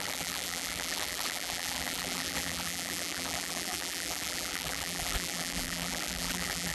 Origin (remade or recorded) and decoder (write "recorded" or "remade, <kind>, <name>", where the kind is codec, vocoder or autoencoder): remade, vocoder, BigVGAN v2